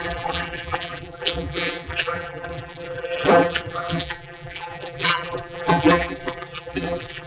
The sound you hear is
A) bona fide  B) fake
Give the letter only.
B